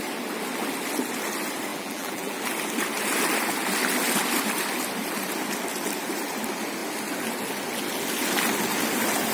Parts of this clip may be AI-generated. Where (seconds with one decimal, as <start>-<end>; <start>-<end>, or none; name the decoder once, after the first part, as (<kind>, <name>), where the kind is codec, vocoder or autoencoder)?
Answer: 1.7-2.4 (vocoder, BigVGAN v2)